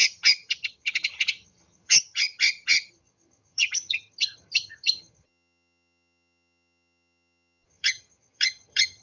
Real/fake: fake